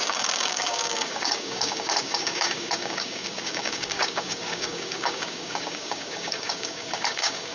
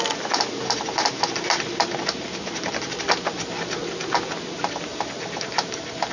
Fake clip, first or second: first